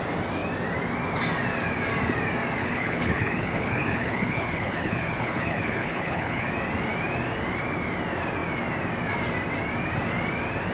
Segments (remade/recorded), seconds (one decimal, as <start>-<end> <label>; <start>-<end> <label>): 0.0-2.6 recorded; 2.6-6.5 remade; 6.5-10.7 recorded